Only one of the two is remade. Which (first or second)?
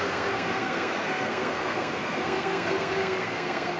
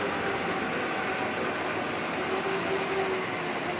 first